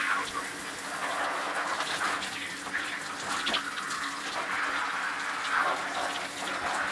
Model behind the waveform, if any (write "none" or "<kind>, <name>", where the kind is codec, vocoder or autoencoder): none